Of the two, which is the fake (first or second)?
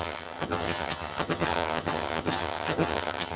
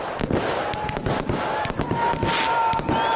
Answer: first